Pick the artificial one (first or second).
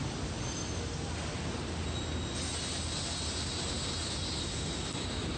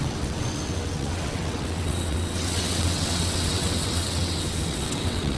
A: second